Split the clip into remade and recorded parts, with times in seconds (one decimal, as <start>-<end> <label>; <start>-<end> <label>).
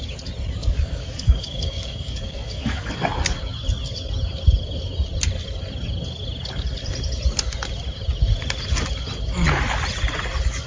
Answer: 0.0-0.6 recorded; 0.6-2.9 remade; 2.9-10.7 recorded